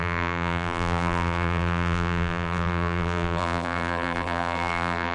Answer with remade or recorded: remade